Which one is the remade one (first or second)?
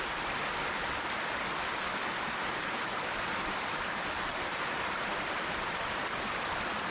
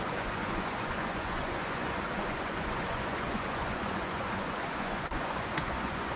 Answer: second